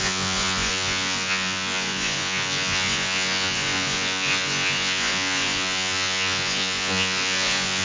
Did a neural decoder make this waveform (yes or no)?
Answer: yes